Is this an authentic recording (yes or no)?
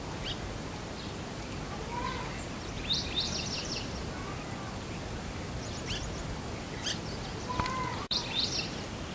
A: yes